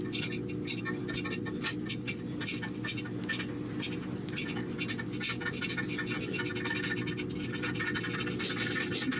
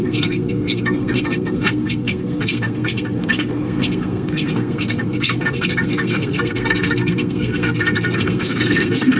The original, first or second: first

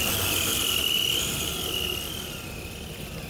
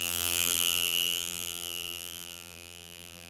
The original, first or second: first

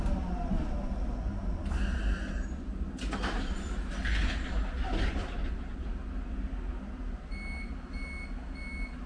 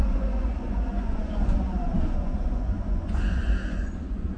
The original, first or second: first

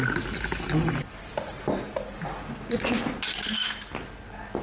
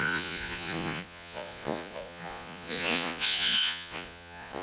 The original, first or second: first